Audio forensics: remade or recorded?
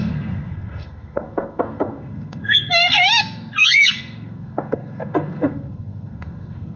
remade